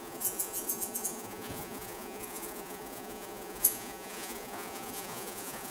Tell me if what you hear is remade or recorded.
remade